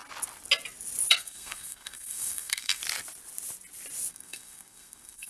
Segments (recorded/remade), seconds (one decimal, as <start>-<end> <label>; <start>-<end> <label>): 0.0-1.1 recorded; 1.1-2.8 remade; 2.8-4.1 recorded; 4.1-5.3 remade